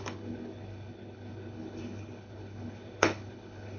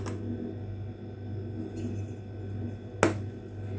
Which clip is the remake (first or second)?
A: first